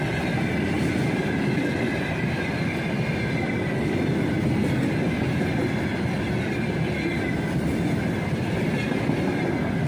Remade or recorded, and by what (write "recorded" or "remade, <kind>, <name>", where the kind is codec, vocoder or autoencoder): recorded